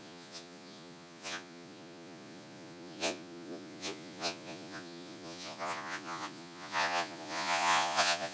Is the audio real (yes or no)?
no